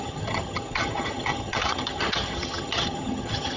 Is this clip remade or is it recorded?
remade